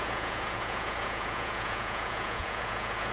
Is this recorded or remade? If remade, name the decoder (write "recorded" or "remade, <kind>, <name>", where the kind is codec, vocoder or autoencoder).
remade, vocoder, Vocos